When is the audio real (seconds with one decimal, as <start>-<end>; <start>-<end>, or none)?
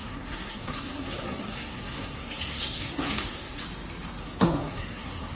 3.6-4.2